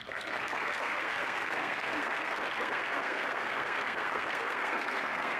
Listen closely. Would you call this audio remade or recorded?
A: remade